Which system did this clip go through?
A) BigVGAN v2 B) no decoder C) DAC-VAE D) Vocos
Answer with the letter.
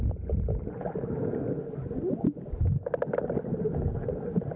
B